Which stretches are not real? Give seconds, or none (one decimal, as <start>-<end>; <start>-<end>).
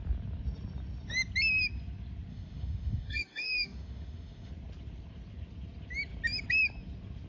2.3-4.5